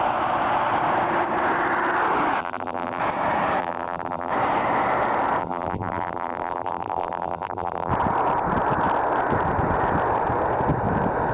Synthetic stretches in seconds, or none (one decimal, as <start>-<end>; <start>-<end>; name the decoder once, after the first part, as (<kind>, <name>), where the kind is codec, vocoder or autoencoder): 2.4-3.0 (vocoder, BigVGAN v2); 3.6-4.3; 5.4-7.9